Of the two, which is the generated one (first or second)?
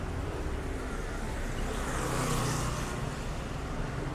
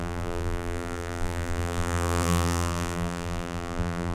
second